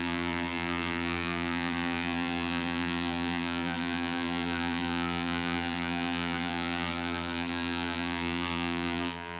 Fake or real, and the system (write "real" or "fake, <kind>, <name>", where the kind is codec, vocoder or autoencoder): fake, vocoder, BigVGAN v2